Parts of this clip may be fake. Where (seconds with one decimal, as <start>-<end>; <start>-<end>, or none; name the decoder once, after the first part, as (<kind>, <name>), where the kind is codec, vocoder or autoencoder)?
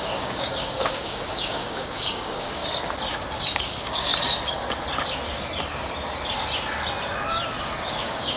0.0-2.6 (codec, DAC); 3.6-4.1; 7.9-8.4